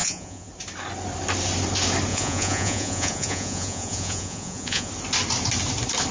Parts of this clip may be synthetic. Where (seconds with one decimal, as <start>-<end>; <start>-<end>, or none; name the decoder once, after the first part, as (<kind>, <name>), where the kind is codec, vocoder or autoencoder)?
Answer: 0.0-0.5 (vocoder, Vocos); 2.1-4.9